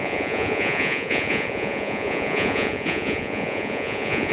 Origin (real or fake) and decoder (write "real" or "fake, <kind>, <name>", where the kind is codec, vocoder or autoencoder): fake, vocoder, Vocos